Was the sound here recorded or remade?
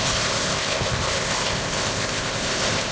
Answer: remade